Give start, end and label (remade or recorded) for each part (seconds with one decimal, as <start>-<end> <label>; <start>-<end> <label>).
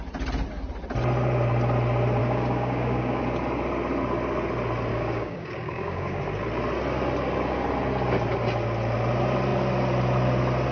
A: 0.0-2.2 recorded; 2.2-3.2 remade; 3.2-4.9 recorded; 4.9-6.2 remade; 6.2-10.7 recorded